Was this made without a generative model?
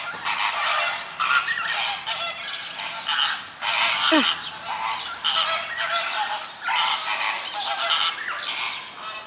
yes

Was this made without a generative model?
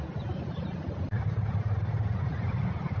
yes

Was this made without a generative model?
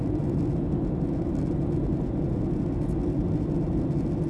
yes